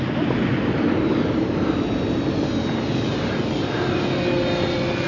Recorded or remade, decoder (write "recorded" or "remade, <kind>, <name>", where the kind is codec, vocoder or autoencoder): recorded